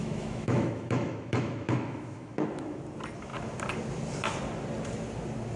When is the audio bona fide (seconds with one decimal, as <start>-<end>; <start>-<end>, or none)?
2.8-5.6